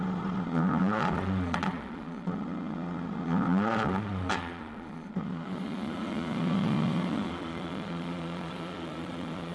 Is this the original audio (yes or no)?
no